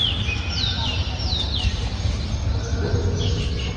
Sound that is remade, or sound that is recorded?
recorded